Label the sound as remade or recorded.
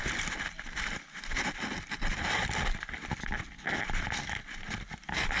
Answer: remade